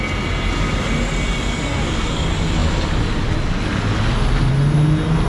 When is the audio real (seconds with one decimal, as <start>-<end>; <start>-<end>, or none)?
0.0-5.3

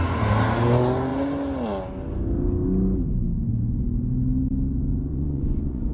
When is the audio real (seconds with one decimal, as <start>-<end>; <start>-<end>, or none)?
0.0-5.1

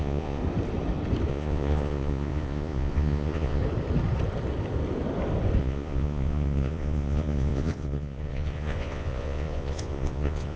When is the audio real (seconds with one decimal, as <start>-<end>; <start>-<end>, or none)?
0.4-1.3; 3.6-5.6

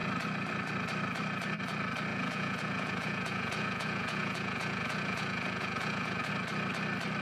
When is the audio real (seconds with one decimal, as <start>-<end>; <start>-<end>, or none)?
0.0-2.1; 6.3-7.2

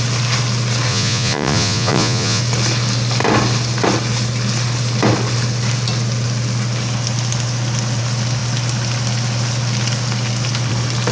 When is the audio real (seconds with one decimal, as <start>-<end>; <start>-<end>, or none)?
0.0-0.9; 2.4-11.1

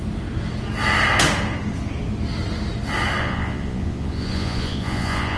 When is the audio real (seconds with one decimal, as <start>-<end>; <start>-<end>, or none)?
0.0-3.2

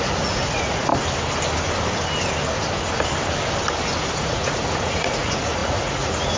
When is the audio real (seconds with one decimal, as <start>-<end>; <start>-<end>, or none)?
0.9-4.2